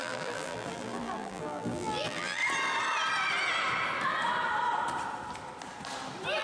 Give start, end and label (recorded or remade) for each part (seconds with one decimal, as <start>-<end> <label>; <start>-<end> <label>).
0.0-2.4 remade; 2.4-6.4 recorded